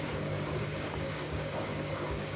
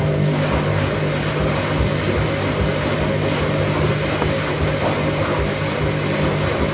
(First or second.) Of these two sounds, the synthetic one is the first